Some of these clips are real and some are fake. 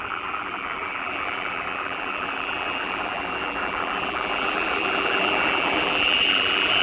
fake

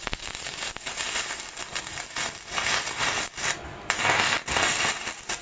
real